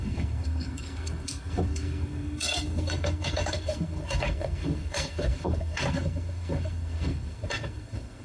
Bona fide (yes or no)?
no